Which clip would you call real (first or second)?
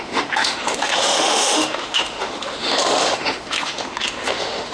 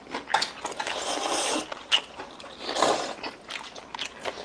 second